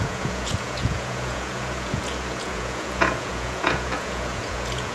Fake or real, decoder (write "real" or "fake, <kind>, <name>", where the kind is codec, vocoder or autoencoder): fake, vocoder, Vocos